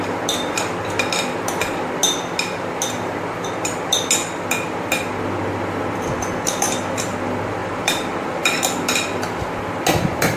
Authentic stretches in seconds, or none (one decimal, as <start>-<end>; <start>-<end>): 0.0-7.6; 8.4-10.4

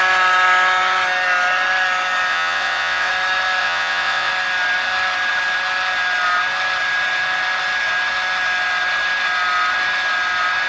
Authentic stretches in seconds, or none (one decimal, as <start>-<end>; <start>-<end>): 0.0-2.3; 3.1-3.6; 4.3-10.7

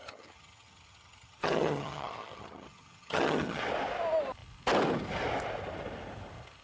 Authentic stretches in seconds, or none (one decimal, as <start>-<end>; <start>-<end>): 3.6-6.6